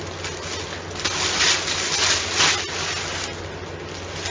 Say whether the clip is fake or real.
real